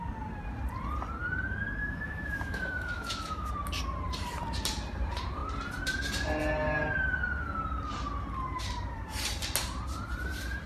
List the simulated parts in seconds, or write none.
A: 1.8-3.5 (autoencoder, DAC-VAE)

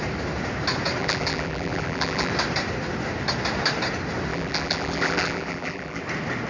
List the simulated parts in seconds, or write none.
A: 1.0-2.3 (vocoder, BigVGAN v2); 4.3-6.0

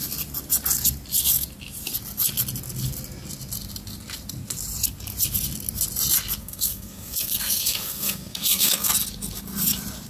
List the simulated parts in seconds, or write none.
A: 6.4-8.9 (codec, SNAC)

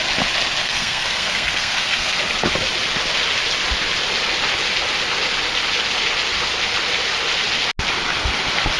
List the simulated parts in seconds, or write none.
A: 0.6-2.2 (codec, SNAC)

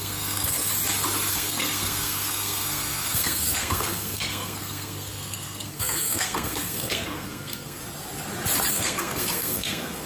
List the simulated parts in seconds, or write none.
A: 0.0-0.7 (codec, SNAC); 1.3-7.8; 8.7-10.1

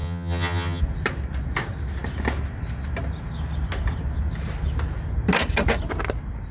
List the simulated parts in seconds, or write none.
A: 0.0-0.8 (vocoder, HiFi-GAN)

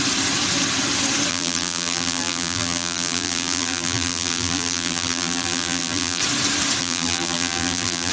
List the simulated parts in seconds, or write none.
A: 1.3-6.2 (vocoder, BigVGAN v2); 6.8-8.1

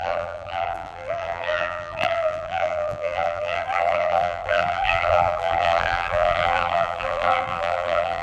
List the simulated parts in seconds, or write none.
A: 0.0-8.2 (vocoder, BigVGAN v2)